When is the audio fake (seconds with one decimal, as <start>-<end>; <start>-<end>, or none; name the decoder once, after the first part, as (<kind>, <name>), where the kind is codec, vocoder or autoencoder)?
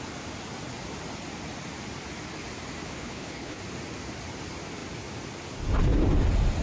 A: 2.8-3.6 (codec, HILCodec)